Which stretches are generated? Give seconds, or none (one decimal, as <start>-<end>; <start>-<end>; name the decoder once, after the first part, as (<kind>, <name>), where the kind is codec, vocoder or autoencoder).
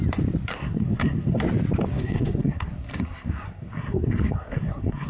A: 0.5-1.4 (codec, SNAC); 1.9-5.1